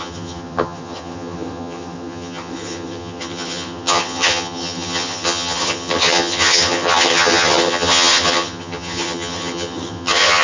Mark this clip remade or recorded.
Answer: remade